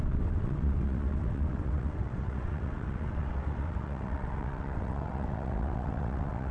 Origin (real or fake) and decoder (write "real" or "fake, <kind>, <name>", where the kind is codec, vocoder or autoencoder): fake, vocoder, WaveNeXt